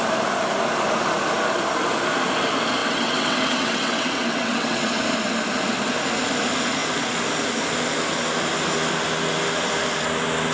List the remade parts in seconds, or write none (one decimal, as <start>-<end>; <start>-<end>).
2.8-5.0